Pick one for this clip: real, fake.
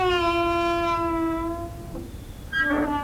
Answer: real